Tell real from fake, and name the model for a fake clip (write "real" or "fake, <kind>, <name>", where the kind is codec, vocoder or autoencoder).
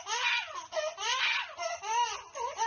real